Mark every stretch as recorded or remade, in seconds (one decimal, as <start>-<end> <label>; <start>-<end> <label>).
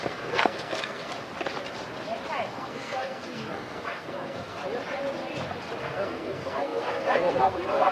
0.0-1.1 remade; 1.1-2.5 recorded; 2.5-4.6 remade; 4.6-5.8 recorded; 5.8-7.9 remade